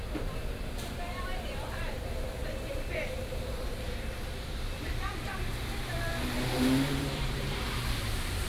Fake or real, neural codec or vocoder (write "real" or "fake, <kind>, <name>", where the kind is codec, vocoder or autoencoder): fake, vocoder, BigVGAN v2